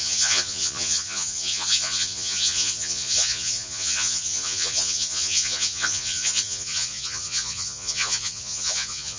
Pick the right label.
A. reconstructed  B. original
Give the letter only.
A